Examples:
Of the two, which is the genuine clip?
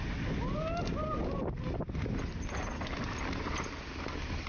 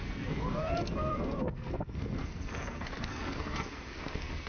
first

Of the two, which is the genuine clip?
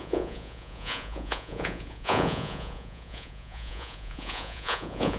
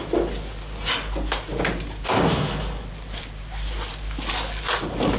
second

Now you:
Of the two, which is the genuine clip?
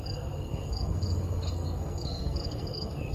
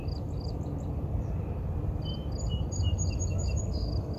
second